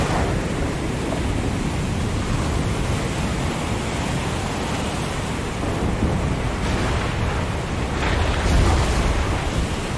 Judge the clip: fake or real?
real